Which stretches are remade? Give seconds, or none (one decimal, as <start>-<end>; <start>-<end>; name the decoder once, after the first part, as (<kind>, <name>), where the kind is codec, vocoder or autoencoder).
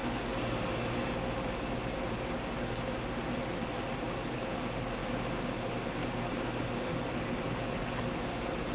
none